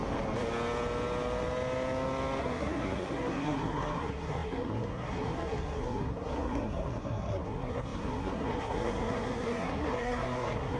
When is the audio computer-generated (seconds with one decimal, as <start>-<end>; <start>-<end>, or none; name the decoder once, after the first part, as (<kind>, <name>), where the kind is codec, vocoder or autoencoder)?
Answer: 2.4-10.8 (codec, SNAC)